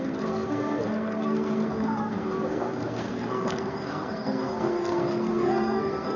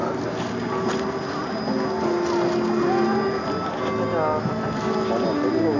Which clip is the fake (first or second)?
first